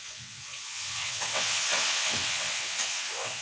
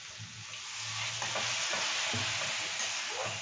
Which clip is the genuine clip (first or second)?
second